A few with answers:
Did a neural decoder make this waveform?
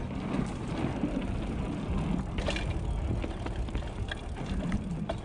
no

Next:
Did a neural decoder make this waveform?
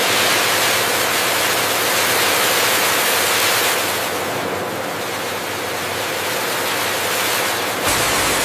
no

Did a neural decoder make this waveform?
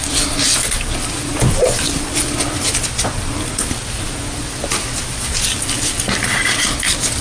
no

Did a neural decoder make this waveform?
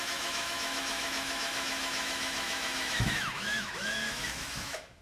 yes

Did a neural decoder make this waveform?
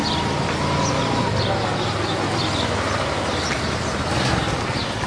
no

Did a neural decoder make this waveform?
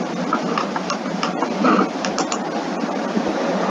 no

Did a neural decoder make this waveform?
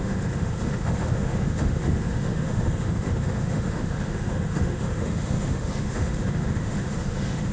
yes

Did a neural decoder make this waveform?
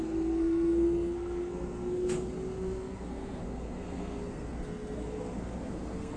yes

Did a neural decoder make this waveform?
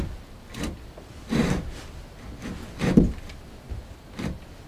no